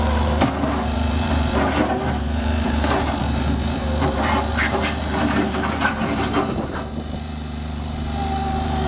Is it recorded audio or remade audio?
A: remade